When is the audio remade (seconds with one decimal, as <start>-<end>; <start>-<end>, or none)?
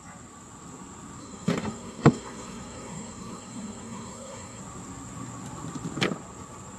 1.2-4.6